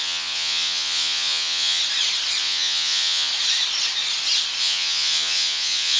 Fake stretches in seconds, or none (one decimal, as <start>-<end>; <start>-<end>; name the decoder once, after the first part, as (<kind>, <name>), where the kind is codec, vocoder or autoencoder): 0.0-1.8 (vocoder, Vocos); 2.4-3.3; 4.6-6.0